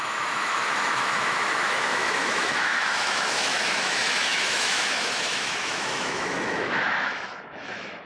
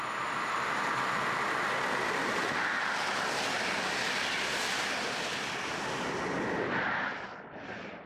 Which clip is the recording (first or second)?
second